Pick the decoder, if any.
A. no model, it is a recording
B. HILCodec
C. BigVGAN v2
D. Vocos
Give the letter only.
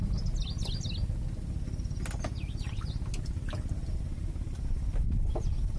A